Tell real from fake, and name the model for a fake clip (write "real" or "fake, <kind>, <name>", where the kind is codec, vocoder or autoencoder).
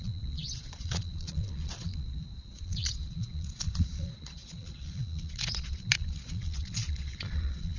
fake, vocoder, Vocos